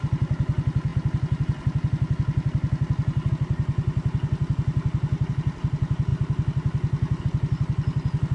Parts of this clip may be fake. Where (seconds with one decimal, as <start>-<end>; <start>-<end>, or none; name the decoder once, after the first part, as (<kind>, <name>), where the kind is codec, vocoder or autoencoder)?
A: none